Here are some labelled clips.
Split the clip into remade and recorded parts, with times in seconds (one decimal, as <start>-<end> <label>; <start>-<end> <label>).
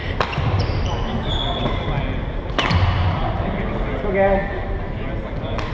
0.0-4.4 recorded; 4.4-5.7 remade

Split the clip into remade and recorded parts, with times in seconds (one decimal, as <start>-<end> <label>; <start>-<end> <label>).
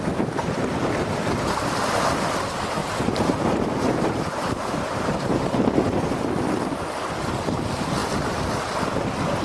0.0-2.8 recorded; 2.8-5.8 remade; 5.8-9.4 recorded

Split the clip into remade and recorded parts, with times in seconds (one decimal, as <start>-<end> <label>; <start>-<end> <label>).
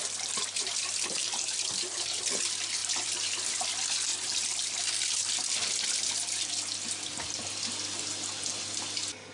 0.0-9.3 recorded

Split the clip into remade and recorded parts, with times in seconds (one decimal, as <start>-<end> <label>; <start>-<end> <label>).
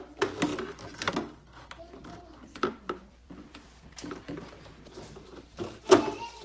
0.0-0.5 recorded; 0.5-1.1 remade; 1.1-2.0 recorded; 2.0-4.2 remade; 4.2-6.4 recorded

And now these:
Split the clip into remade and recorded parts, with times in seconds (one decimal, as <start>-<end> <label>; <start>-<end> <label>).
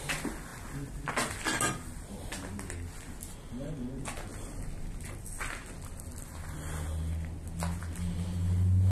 0.0-8.9 recorded